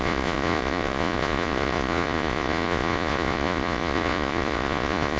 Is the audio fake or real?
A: fake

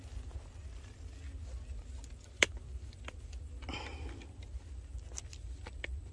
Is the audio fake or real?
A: real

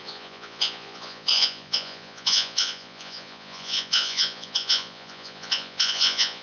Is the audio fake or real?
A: fake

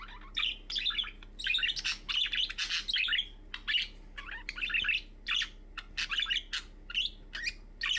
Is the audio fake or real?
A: real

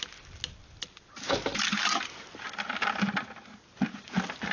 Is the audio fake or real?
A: real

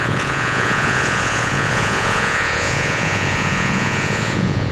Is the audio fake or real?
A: fake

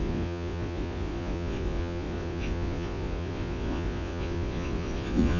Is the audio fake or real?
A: fake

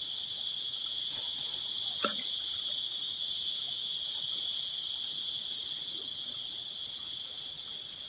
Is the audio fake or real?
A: fake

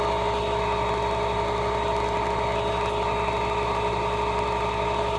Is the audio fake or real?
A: real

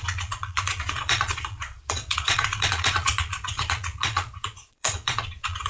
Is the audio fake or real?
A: fake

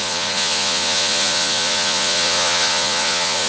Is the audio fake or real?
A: fake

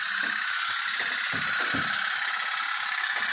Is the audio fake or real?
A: real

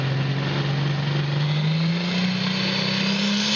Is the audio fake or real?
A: real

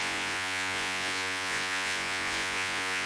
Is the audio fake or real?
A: fake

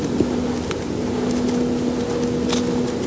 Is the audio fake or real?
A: real